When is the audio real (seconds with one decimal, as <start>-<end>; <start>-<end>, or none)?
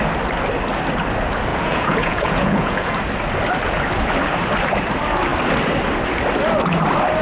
0.0-1.5; 2.9-7.2